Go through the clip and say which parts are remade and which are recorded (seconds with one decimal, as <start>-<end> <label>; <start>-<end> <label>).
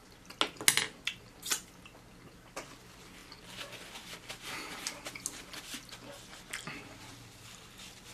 0.0-8.1 recorded